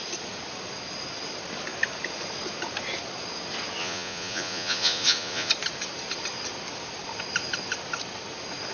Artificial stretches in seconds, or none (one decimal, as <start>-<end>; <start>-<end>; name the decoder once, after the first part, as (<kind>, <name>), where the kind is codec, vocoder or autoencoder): 3.8-5.5 (vocoder, Vocos)